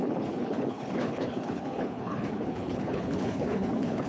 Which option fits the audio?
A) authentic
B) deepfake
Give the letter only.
B